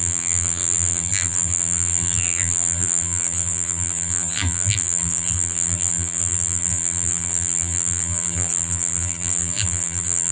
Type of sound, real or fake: fake